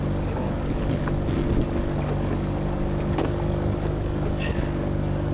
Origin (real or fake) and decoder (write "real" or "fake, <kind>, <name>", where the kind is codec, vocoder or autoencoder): fake, codec, DAC